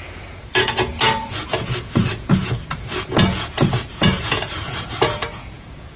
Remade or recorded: remade